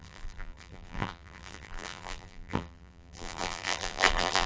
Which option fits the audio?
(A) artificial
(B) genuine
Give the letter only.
A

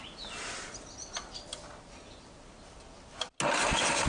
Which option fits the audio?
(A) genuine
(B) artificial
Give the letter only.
A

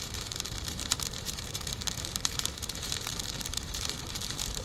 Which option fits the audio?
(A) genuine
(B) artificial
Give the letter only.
B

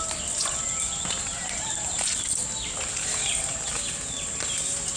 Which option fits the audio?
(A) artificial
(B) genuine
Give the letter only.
B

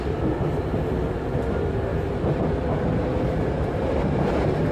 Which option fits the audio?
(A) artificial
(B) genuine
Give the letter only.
B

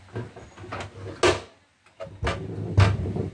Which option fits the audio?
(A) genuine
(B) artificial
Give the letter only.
A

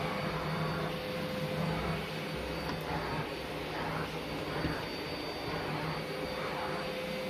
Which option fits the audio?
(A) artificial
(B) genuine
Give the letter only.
B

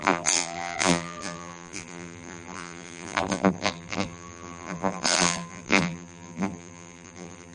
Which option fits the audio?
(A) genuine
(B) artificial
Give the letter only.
B